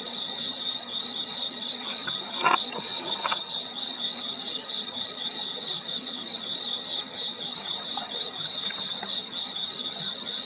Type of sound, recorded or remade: remade